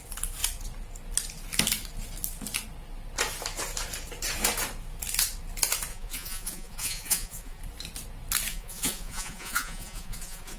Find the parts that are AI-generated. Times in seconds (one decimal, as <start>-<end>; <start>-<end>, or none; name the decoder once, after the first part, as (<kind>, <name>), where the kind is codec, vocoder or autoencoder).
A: 5.9-7.6 (vocoder, Vocos); 8.5-10.6